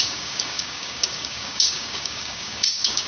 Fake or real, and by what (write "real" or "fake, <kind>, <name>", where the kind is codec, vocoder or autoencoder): fake, codec, DAC